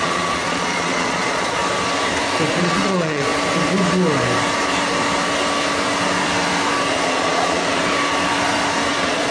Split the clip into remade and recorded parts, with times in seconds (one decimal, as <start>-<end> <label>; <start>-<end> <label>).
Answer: 0.0-1.6 remade; 1.6-2.6 recorded; 2.6-3.3 remade; 3.3-6.8 recorded; 6.8-7.8 remade; 7.8-8.9 recorded; 8.9-9.3 remade